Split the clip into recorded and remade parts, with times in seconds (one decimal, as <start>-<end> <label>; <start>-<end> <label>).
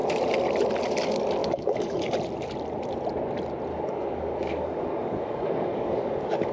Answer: 0.0-1.4 recorded; 1.4-2.0 remade; 2.0-3.7 recorded; 3.7-6.5 remade